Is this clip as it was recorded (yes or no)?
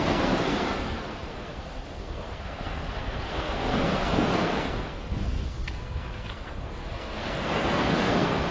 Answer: no